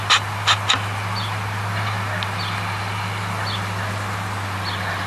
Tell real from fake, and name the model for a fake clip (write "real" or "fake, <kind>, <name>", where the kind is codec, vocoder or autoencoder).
real